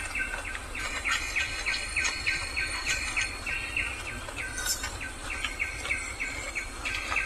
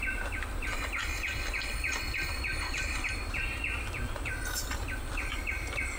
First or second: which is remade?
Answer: first